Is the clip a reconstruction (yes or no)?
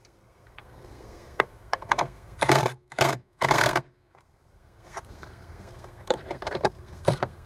yes